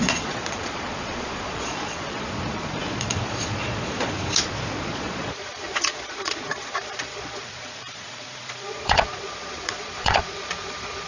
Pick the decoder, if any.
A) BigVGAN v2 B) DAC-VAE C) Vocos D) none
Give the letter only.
C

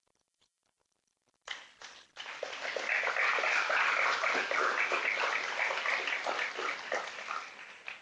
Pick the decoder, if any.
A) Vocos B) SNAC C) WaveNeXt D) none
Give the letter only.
D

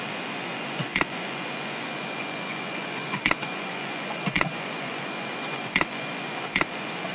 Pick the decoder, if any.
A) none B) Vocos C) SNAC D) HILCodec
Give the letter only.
B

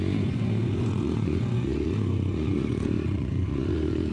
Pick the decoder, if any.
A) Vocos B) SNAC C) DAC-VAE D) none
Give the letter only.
A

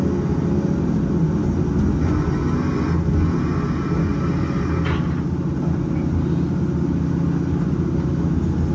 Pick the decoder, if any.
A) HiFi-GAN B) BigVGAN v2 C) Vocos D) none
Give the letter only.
D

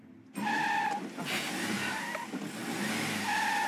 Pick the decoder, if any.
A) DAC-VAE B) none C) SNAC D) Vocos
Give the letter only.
B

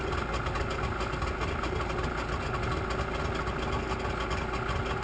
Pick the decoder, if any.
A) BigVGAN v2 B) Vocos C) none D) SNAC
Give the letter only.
C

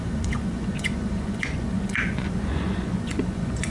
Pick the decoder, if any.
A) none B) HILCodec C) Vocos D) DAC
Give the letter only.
C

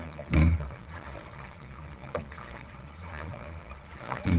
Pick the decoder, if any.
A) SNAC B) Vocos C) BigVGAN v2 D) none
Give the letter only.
B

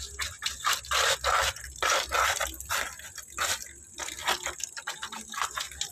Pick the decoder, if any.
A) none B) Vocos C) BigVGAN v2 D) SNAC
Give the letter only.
A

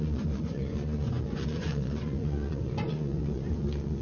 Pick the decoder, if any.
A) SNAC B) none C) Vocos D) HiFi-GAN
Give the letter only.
C